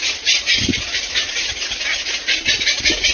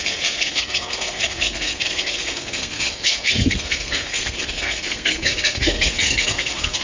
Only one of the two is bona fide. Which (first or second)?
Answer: first